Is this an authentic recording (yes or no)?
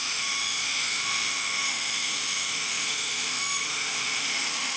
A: no